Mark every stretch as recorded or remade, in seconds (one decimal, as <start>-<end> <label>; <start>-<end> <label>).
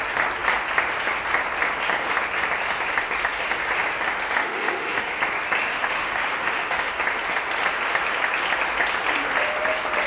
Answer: 0.0-4.4 recorded; 4.4-5.2 remade; 5.2-5.7 recorded; 5.7-6.9 remade; 6.9-10.1 recorded